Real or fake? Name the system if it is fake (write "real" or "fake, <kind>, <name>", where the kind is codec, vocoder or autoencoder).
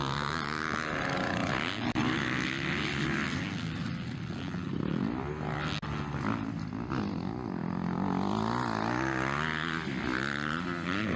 real